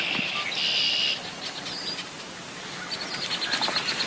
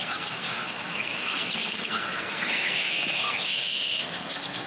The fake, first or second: second